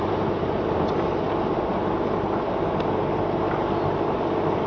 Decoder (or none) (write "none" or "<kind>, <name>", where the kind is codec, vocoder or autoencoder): none